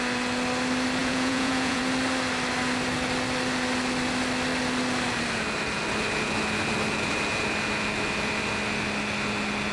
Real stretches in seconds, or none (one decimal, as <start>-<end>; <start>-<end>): 0.0-1.0; 1.8-9.7